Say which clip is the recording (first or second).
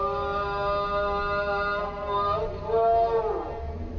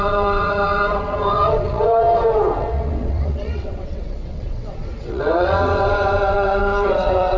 first